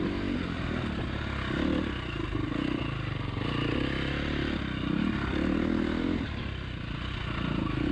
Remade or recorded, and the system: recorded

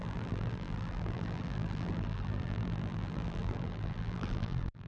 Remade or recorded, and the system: remade, vocoder, BigVGAN v2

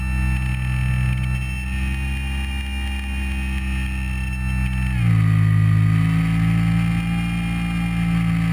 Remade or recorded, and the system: recorded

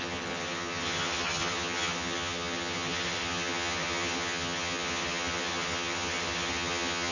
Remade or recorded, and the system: remade, vocoder, HiFi-GAN